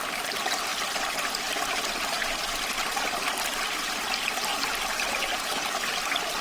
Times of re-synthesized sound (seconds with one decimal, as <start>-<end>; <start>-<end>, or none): 4.5-5.2